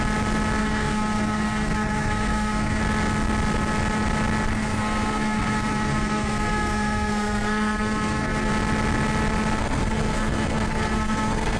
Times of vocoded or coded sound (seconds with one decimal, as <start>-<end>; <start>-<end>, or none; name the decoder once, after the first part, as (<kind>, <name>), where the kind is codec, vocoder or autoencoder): 0.6-2.8 (codec, SNAC); 4.5-8.5; 9.6-11.6